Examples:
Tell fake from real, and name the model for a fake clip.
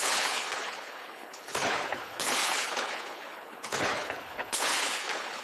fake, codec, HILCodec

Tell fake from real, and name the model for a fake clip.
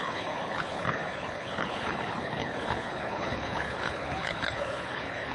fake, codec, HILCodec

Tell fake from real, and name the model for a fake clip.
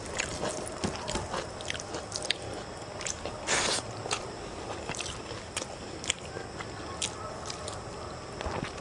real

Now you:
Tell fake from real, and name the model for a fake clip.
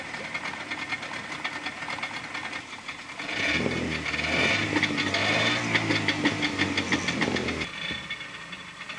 real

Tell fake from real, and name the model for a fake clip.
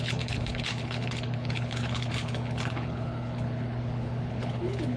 fake, codec, HILCodec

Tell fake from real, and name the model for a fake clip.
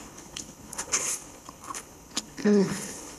fake, codec, HILCodec